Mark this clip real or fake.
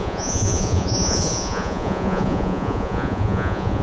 fake